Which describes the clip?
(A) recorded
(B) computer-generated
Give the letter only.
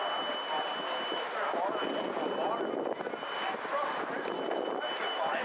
B